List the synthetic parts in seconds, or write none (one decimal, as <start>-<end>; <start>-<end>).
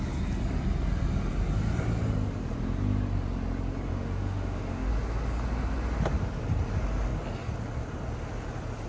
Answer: 3.9-4.9